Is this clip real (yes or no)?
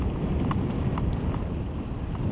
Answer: yes